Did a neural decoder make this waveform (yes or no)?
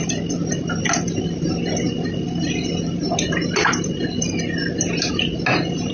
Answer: no